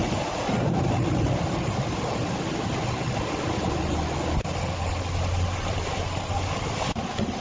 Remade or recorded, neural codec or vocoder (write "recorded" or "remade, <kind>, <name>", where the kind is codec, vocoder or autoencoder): recorded